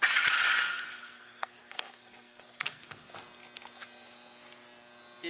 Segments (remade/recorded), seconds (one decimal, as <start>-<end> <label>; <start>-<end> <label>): 0.0-0.7 recorded; 0.7-3.1 remade; 3.1-5.3 recorded